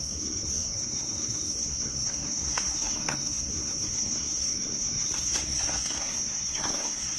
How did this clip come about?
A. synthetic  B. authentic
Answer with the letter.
A